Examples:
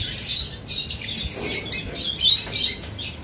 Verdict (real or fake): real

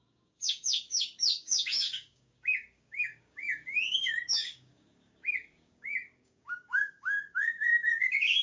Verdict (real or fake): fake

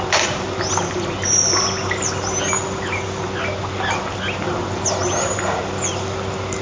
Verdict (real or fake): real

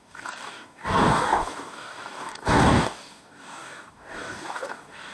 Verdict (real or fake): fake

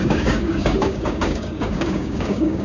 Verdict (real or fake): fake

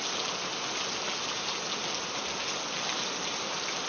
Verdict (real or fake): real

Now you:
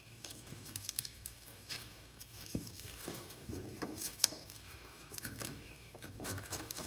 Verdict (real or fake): fake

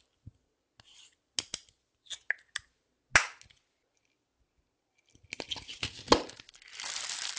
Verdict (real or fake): real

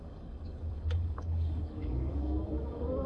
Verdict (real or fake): fake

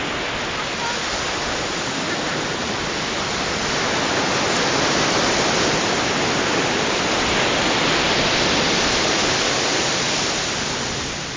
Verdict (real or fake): real